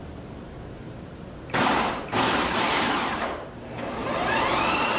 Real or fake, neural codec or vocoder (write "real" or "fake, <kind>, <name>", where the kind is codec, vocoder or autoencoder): fake, vocoder, BigVGAN v2